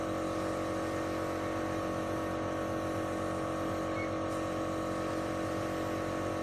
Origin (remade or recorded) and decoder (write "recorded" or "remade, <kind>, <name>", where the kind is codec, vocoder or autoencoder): recorded